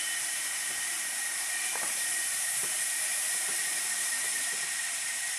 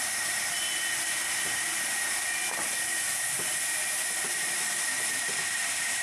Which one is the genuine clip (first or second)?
second